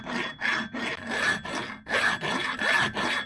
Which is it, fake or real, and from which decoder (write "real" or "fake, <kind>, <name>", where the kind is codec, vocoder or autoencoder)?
real